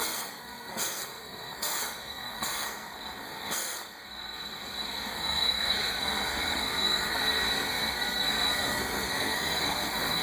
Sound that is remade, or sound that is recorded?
remade